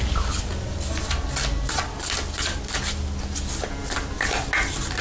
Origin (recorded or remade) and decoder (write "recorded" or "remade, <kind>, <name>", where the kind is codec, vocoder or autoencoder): recorded